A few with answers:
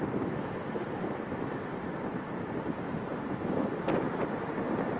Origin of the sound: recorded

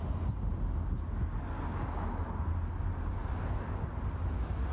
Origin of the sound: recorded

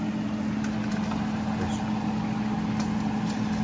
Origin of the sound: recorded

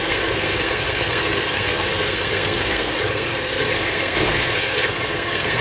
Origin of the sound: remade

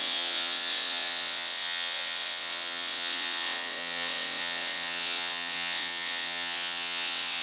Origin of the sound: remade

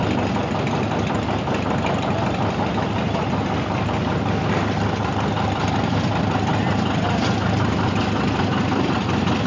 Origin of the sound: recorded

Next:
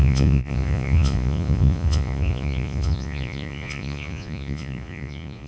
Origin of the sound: remade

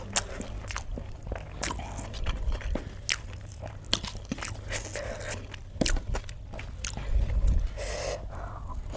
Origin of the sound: recorded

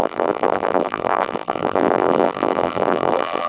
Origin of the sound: remade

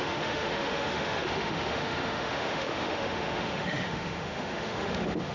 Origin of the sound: remade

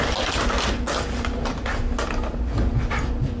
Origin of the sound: recorded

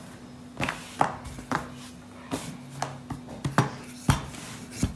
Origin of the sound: recorded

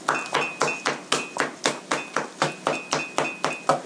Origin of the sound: recorded